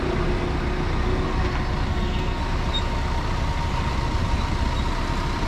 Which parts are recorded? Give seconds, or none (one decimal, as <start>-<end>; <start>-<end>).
0.0-1.9; 2.4-5.5